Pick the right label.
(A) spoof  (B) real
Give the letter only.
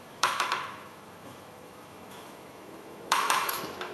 A